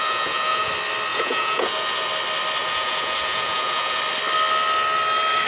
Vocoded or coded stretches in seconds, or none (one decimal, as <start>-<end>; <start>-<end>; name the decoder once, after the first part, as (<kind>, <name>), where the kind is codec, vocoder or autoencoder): 0.0-0.7 (vocoder, Vocos); 1.1-2.1; 2.6-4.0